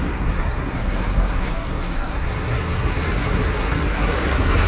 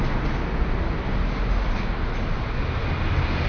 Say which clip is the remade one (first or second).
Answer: first